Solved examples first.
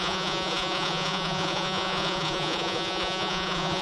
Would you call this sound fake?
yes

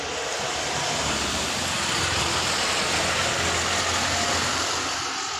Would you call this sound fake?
no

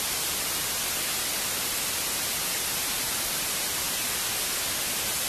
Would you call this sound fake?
no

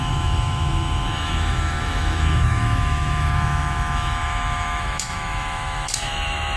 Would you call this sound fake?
yes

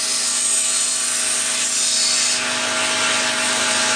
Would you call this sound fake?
no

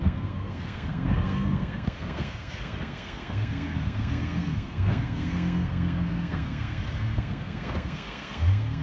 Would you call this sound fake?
yes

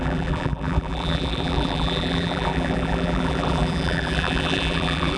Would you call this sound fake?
yes